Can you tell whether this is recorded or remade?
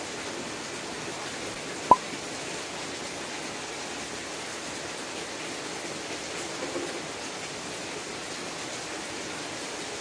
recorded